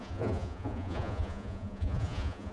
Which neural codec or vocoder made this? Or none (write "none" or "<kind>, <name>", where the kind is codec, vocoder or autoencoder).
vocoder, Vocos